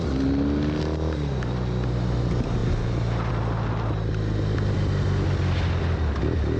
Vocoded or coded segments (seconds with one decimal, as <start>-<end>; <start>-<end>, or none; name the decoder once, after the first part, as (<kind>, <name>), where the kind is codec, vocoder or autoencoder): none